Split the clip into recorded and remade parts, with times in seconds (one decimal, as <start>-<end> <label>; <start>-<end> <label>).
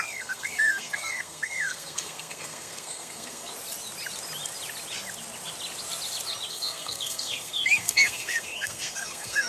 0.0-3.5 remade; 3.5-6.5 recorded; 6.5-9.5 remade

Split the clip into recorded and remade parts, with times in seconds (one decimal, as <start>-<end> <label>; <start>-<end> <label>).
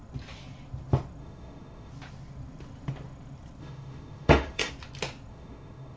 0.0-1.2 recorded; 1.2-1.9 remade; 1.9-3.6 recorded; 3.6-4.7 remade; 4.7-5.3 recorded; 5.3-6.0 remade